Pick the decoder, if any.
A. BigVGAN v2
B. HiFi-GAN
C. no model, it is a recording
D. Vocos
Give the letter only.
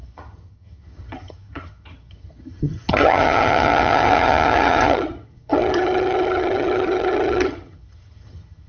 B